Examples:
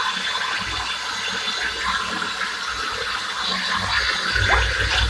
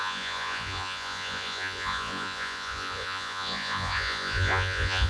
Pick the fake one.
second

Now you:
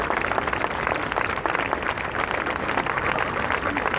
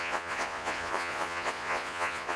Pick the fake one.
second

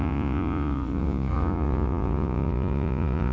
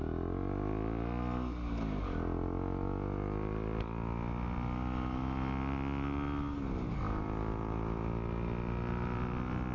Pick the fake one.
first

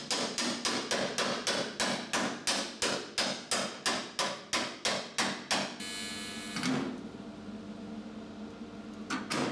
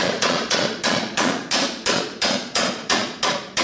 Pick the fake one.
second